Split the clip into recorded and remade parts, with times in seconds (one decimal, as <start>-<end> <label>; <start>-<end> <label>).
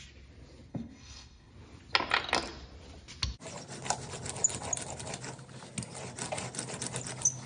0.0-0.7 recorded; 0.7-1.5 remade; 1.5-7.5 recorded